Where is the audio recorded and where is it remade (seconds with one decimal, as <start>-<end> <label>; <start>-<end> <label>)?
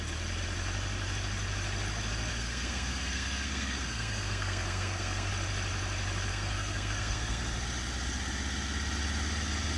0.0-2.3 recorded; 2.3-5.3 remade; 5.3-6.3 recorded; 6.3-7.4 remade; 7.4-9.8 recorded